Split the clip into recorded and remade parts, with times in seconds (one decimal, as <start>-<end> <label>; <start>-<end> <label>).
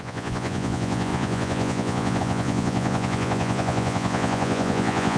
0.0-5.2 remade